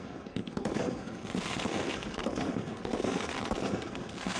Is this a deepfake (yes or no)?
yes